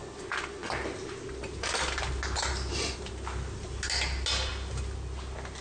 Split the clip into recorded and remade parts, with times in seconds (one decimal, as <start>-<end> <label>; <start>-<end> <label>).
0.0-5.6 recorded